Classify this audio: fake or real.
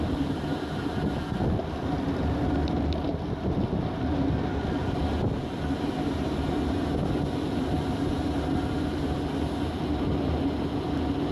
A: real